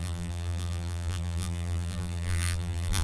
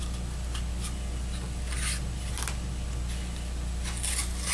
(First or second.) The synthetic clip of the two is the first